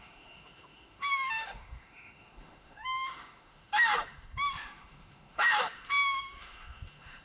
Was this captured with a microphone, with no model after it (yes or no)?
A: no